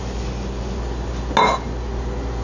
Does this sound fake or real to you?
real